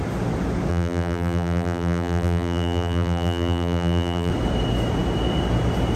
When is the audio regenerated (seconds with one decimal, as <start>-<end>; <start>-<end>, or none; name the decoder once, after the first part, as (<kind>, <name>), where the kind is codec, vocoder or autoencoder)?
0.7-4.3 (vocoder, BigVGAN v2)